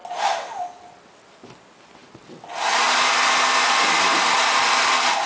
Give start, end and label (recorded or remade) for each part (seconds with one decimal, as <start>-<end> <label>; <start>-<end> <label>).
0.0-5.3 recorded